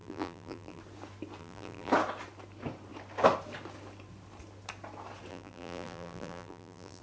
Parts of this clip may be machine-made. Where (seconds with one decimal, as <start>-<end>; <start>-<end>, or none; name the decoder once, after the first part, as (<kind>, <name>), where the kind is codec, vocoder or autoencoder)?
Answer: 0.0-0.8 (vocoder, BigVGAN v2); 1.4-1.9; 5.3-7.0